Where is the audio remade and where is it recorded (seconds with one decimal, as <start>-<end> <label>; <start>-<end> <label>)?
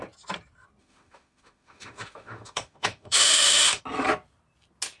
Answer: 0.0-0.8 recorded; 0.8-3.8 remade; 3.8-5.0 recorded